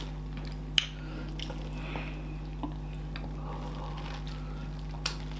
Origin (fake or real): real